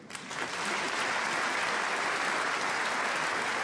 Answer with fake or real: real